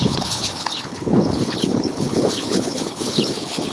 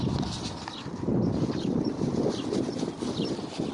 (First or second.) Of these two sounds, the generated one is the first